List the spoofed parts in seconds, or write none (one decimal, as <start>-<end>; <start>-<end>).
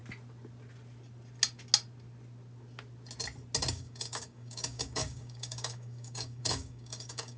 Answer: 3.7-7.4